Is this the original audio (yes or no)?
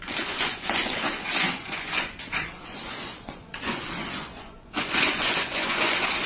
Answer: no